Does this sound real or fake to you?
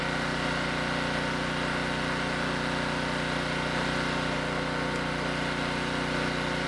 real